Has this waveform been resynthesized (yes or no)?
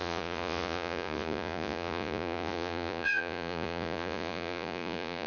yes